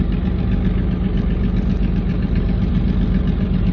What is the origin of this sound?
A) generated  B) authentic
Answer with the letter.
B